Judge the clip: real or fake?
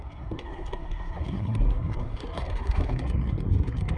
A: fake